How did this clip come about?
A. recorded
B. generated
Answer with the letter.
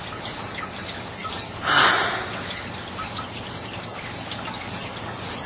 A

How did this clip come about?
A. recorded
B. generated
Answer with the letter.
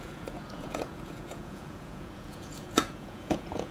B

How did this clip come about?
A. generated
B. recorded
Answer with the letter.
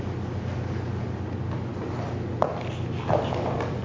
B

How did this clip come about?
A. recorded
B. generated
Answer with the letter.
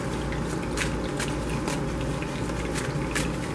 A